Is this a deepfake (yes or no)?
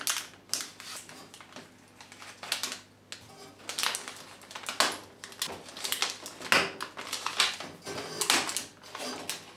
no